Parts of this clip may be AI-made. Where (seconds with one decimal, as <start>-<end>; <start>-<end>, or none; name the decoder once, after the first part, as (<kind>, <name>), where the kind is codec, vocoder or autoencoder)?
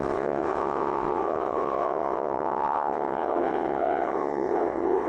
0.0-5.1 (vocoder, WaveNeXt)